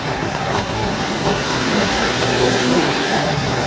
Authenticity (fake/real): fake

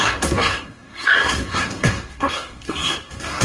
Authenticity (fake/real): fake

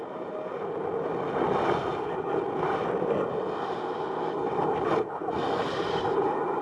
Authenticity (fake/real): real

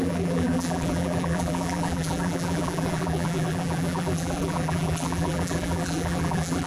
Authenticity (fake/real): fake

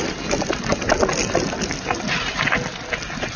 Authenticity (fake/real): real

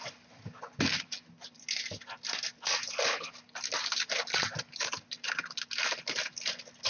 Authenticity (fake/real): real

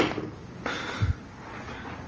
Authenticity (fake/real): real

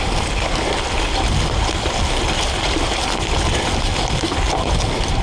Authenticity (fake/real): real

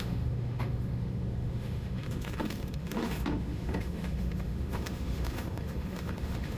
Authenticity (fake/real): fake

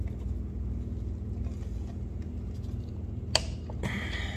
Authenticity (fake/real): real